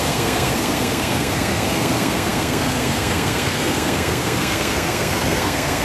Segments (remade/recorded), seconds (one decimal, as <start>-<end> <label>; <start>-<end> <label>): 0.0-5.8 remade